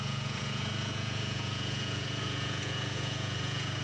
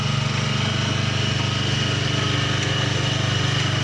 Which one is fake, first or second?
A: first